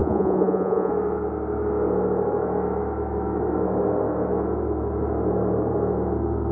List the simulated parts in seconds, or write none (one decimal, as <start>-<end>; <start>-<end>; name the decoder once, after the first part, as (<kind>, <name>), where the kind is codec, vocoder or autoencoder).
0.0-0.9 (vocoder, Vocos)